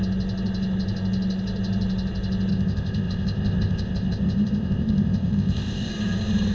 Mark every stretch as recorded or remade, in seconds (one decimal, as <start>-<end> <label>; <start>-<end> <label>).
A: 0.0-2.5 recorded; 2.5-5.9 remade; 5.9-6.5 recorded